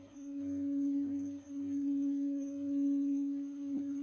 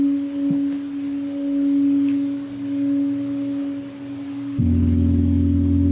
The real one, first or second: second